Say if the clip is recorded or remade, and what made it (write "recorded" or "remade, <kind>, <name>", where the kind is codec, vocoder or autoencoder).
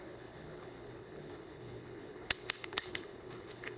remade, codec, HILCodec